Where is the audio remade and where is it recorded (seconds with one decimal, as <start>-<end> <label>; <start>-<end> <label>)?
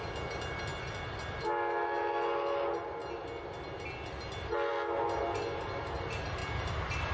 0.0-7.1 recorded